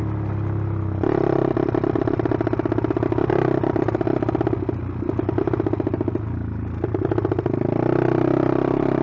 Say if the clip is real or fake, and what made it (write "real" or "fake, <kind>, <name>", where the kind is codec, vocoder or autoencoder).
real